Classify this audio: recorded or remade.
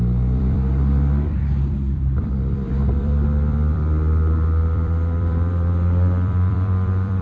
remade